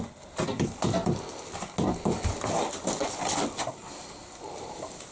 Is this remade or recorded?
recorded